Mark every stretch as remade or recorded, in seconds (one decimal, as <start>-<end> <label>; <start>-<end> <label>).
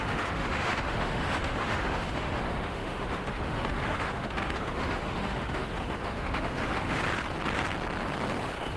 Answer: 0.0-7.0 remade; 7.0-8.8 recorded